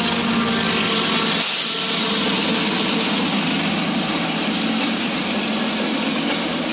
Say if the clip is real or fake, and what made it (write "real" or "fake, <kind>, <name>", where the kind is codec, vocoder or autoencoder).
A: real